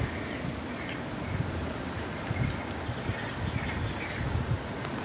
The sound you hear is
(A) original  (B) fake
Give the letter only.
A